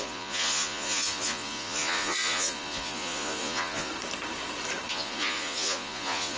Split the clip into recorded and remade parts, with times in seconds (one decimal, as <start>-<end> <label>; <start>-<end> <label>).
0.0-3.9 remade; 3.9-4.9 recorded; 4.9-6.4 remade